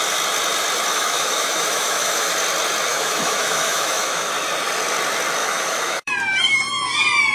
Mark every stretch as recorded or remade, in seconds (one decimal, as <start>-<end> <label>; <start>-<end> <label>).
0.0-0.9 recorded; 0.9-2.3 remade; 2.3-2.9 recorded; 2.9-4.3 remade; 4.3-5.4 recorded; 5.4-6.1 remade; 6.1-7.3 recorded